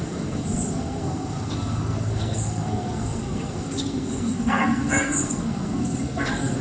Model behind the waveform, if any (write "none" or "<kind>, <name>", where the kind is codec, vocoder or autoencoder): codec, SNAC